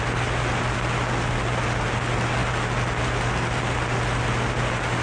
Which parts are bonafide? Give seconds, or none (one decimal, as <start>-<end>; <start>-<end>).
0.0-5.0